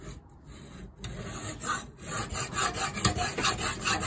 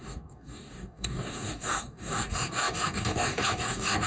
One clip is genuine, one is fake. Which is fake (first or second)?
second